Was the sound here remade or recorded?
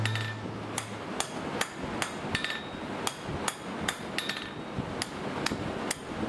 recorded